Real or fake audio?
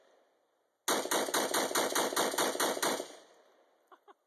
real